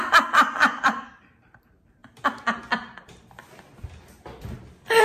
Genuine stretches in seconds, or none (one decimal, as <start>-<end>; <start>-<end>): 2.0-5.0